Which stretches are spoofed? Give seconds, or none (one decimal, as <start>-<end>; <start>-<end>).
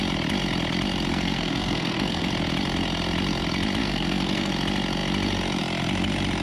1.1-2.3; 3.8-4.5